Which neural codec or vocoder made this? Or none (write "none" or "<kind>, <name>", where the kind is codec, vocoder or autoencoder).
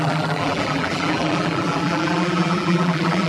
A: vocoder, BigVGAN v2